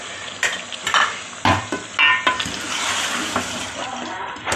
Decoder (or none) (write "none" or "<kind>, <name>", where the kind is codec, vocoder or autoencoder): none